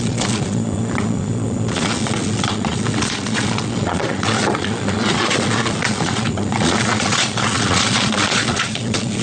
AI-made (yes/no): yes